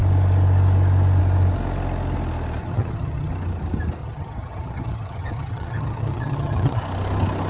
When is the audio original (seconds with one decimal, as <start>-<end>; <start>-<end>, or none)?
0.0-2.6; 3.3-4.0; 6.8-7.5